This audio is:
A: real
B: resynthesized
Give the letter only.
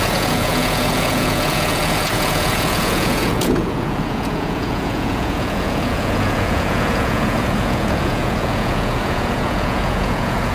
B